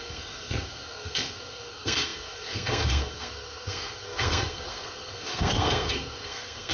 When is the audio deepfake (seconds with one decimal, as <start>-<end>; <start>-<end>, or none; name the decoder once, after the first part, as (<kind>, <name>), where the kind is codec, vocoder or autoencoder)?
0.0-6.7 (codec, SNAC)